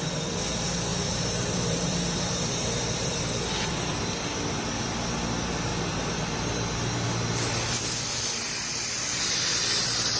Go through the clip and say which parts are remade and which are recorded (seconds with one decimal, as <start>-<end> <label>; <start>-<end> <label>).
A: 0.0-0.9 recorded; 0.9-3.1 remade; 3.1-10.2 recorded